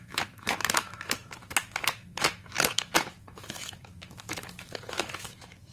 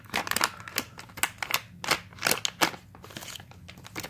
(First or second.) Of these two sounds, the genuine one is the second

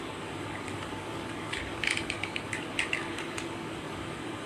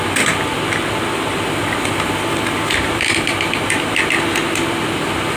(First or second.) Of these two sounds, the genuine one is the second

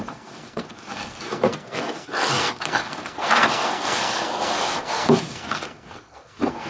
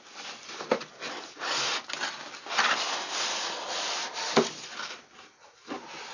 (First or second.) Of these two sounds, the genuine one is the second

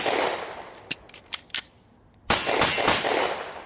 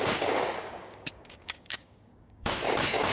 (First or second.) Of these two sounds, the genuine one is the first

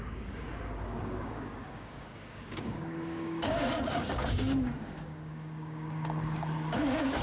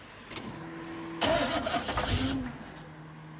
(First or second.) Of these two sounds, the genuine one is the second